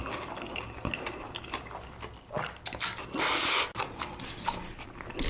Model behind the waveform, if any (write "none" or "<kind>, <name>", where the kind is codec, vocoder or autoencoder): none